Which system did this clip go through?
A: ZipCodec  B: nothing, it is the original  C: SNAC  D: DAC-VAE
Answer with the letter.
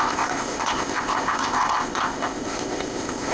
A